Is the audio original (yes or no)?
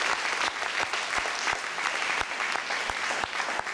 yes